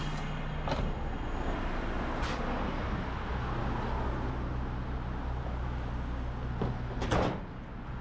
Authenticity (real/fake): real